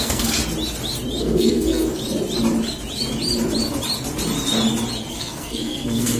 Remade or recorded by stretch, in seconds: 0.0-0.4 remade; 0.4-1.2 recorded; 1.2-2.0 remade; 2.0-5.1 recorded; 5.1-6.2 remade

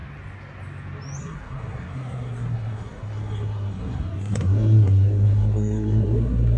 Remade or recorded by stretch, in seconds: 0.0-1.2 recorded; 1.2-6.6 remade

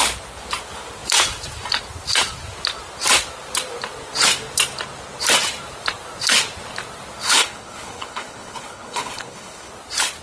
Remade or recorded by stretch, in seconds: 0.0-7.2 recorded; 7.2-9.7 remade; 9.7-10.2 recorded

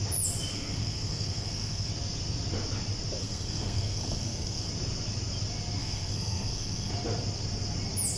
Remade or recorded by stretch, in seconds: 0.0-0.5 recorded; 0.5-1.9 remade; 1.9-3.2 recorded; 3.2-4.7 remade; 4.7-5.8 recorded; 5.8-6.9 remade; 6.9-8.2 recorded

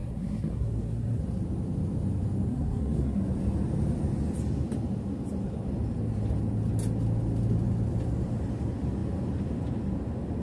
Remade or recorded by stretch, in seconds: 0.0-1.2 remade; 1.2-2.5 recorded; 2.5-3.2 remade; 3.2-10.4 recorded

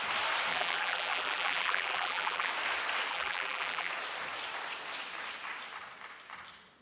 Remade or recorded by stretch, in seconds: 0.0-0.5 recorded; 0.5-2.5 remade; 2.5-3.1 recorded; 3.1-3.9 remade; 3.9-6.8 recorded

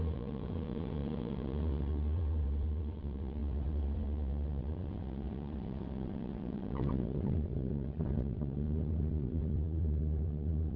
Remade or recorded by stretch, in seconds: 0.0-10.8 remade

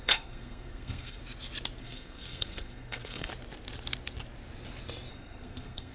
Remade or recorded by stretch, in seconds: 0.0-1.2 remade; 1.2-1.8 recorded; 1.8-3.3 remade; 3.3-5.1 recorded; 5.1-5.9 remade